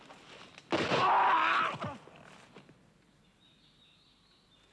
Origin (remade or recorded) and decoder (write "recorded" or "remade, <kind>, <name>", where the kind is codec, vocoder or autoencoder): recorded